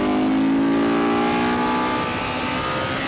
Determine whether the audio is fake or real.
real